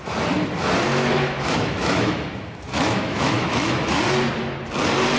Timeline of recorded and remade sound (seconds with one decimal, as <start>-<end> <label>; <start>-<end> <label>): 0.0-0.9 recorded; 0.9-4.0 remade; 4.0-5.2 recorded